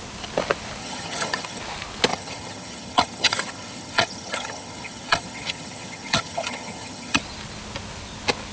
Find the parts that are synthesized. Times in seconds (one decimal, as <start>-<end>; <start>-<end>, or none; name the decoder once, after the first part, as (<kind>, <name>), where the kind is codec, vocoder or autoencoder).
0.8-1.6 (vocoder, HiFi-GAN); 2.1-7.2